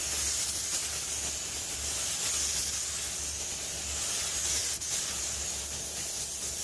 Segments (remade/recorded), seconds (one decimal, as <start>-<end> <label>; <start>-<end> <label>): 0.0-6.6 recorded